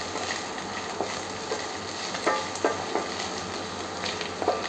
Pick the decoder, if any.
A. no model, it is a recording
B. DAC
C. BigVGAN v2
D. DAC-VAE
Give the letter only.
A